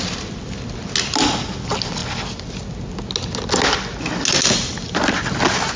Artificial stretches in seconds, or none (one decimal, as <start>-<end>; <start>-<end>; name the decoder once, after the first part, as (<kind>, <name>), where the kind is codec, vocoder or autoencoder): none